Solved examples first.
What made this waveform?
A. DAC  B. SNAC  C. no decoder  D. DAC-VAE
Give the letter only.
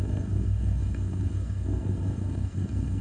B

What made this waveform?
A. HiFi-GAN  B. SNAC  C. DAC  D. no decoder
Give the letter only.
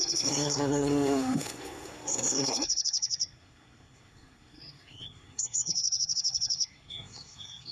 B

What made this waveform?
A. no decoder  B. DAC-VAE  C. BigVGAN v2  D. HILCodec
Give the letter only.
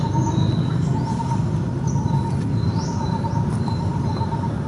A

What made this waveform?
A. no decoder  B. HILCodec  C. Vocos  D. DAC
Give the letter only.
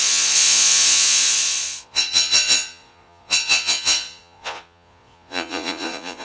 C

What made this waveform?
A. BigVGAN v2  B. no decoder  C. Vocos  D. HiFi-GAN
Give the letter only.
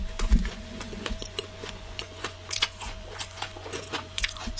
C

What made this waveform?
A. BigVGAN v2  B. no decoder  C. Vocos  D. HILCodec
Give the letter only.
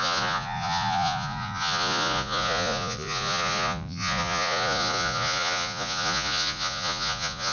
C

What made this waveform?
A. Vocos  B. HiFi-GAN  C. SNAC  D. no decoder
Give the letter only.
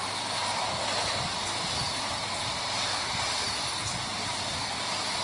D